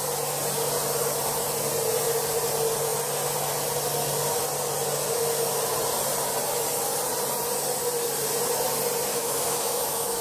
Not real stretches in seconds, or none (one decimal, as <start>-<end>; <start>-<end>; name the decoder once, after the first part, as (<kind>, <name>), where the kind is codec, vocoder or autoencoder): 9.1-10.2 (autoencoder, DAC-VAE)